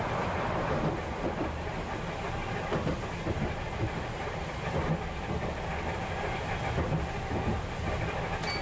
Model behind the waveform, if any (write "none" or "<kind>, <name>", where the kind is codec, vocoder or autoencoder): none